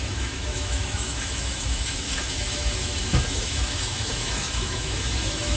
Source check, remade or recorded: remade